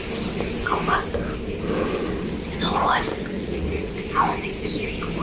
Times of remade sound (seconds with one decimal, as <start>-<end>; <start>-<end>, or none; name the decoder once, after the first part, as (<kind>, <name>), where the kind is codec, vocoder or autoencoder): 3.1-3.9 (vocoder, Vocos)